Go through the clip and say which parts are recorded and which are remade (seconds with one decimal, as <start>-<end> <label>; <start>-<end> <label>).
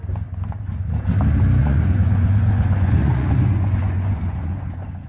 0.0-1.6 recorded; 1.6-5.1 remade